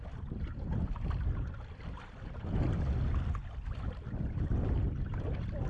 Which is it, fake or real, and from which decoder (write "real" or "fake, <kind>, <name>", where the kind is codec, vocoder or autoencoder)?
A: real